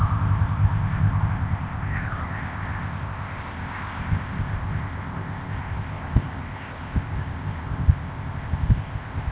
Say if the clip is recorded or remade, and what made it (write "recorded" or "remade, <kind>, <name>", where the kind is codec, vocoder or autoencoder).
remade, codec, ZipCodec